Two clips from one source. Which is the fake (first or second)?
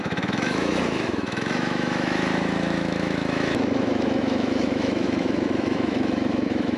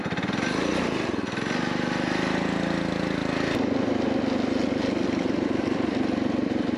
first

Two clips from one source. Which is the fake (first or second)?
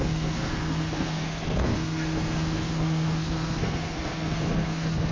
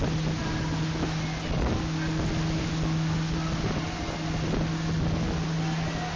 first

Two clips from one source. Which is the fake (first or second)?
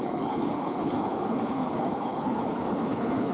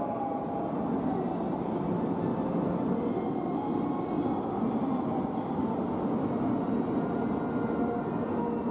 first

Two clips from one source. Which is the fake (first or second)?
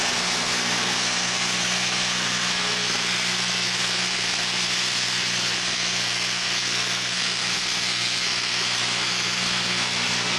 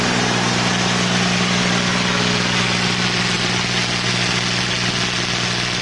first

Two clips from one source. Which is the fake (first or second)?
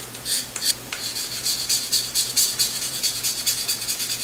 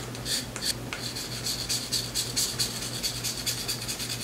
first